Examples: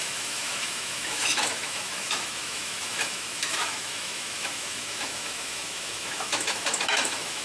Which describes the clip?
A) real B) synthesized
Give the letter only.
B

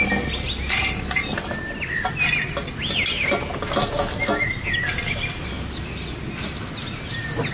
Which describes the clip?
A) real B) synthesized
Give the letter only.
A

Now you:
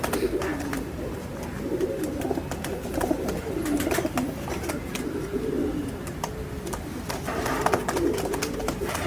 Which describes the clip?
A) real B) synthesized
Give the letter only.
A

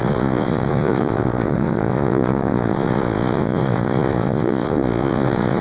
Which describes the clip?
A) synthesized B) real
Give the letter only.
A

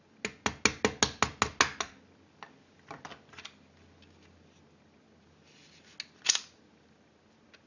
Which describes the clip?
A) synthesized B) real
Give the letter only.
B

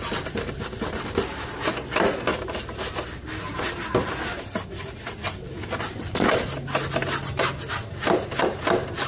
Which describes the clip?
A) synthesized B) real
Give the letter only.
B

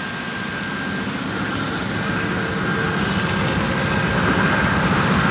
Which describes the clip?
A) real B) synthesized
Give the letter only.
A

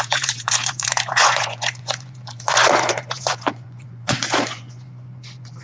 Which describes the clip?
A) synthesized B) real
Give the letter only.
A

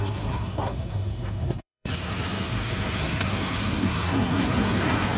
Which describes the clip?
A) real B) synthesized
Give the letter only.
B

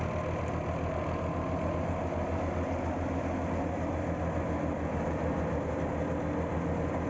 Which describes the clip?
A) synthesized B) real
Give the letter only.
B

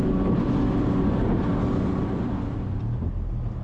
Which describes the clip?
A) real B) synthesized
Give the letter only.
A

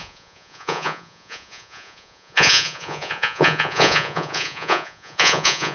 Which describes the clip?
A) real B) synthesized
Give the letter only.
B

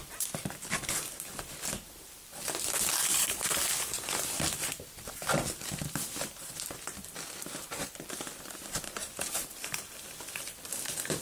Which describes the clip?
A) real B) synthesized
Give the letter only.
B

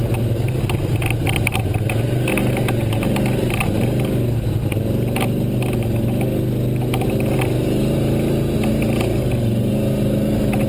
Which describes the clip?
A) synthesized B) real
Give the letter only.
B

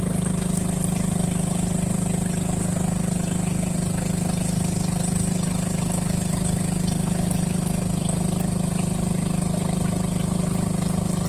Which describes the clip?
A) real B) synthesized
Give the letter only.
A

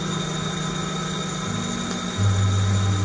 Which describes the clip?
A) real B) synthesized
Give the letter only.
A